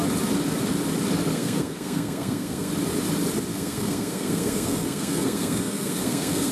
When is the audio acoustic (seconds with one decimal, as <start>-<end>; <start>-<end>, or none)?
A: 0.0-1.3; 2.7-3.5